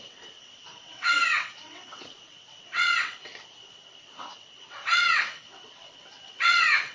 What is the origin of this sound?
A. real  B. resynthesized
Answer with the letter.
B